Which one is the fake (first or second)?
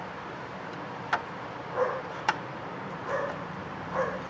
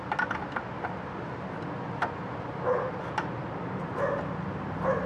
first